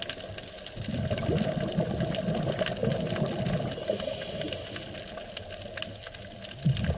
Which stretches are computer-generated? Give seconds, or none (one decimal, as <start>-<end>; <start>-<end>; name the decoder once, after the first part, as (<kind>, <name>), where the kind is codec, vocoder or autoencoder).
none